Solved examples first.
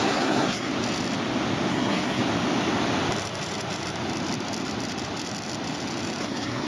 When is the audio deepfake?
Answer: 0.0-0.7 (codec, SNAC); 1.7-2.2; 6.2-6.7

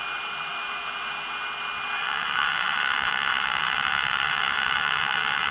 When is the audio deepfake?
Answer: 2.0-5.5 (vocoder, WaveNeXt)